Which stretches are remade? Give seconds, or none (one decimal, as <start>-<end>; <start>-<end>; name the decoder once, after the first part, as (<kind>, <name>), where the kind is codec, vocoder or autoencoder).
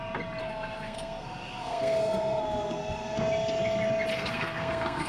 0.4-3.2 (codec, SNAC); 4.1-5.1